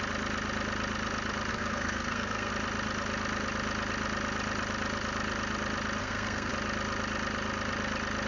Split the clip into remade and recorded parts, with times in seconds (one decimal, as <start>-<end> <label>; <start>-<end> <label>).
0.0-1.5 recorded; 1.5-2.5 remade; 2.5-6.0 recorded; 6.0-6.5 remade; 6.5-8.3 recorded